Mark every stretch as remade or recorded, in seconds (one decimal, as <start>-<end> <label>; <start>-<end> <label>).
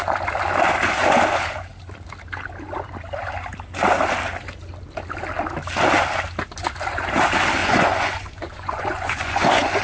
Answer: 0.0-7.6 recorded; 7.6-9.8 remade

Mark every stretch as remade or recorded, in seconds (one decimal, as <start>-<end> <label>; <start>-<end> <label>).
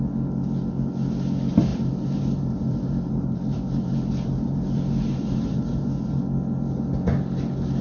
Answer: 0.0-1.7 recorded; 1.7-6.2 remade; 6.2-7.8 recorded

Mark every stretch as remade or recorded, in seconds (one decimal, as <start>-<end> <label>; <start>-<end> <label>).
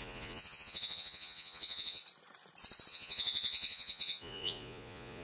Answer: 0.0-2.0 remade; 2.0-2.9 recorded; 2.9-5.2 remade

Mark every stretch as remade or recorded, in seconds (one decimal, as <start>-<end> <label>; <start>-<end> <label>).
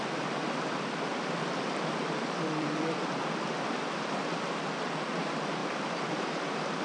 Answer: 0.0-1.1 recorded; 1.1-4.2 remade; 4.2-5.6 recorded; 5.6-6.8 remade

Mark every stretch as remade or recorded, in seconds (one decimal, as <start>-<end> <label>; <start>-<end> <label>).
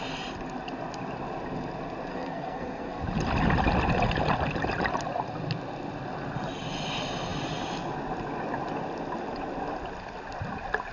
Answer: 0.0-2.1 recorded; 2.1-3.0 remade; 3.0-10.9 recorded